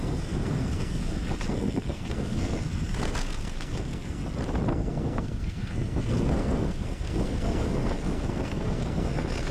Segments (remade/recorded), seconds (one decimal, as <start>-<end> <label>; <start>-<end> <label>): 0.0-4.2 remade; 4.2-4.7 recorded; 4.7-9.5 remade